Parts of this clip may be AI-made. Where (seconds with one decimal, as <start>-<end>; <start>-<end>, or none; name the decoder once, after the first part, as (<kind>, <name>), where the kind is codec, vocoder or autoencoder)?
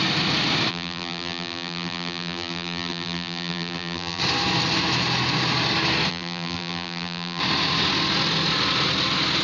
0.7-4.2 (vocoder, BigVGAN v2); 6.1-7.4